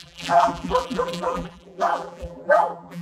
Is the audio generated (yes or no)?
yes